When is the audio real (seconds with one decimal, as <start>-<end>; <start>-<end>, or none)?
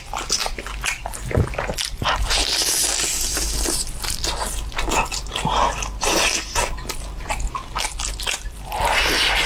0.0-9.5